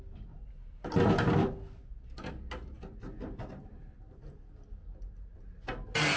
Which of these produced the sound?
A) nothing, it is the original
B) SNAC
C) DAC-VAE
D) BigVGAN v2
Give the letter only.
A